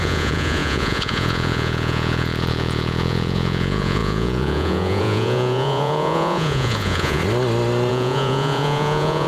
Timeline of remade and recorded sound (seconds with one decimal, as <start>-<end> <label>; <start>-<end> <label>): 0.0-7.2 remade; 7.2-7.9 recorded; 7.9-9.3 remade